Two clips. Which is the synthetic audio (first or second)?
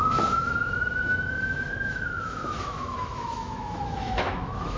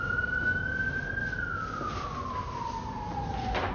first